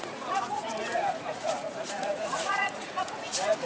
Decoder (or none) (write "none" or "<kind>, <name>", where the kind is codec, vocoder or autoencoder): vocoder, Vocos